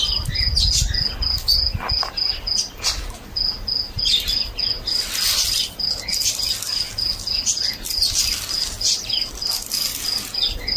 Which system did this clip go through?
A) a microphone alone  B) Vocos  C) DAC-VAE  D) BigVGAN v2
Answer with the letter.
A